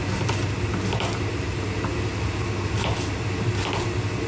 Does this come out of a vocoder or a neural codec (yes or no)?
no